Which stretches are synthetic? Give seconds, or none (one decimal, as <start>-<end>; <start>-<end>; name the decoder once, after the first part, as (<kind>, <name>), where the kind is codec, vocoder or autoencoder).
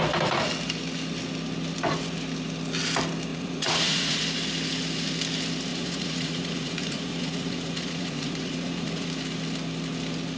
3.3-4.2 (vocoder, Vocos); 5.7-9.1